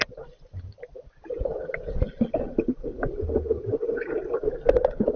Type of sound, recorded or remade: recorded